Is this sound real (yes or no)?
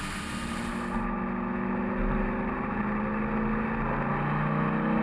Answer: yes